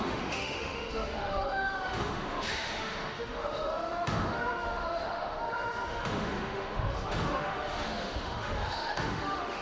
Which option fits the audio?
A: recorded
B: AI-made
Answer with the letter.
B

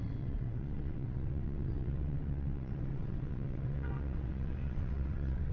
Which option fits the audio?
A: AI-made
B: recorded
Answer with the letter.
A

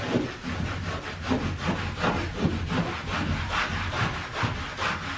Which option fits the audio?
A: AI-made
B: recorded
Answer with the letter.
B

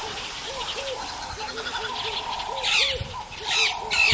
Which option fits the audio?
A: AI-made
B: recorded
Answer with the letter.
B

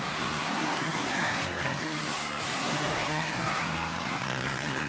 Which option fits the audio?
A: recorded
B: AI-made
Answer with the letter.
B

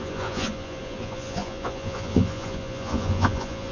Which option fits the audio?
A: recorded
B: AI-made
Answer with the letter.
B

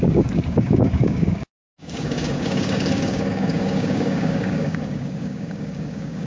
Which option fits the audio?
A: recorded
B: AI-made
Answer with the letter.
B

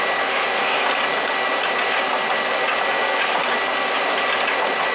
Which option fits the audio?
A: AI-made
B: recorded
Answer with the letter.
B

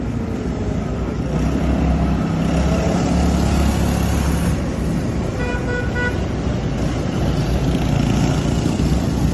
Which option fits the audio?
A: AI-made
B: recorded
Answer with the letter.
B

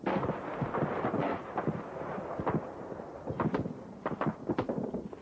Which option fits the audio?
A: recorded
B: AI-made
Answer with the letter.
A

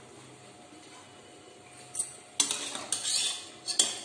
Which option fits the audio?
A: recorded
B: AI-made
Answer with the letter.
A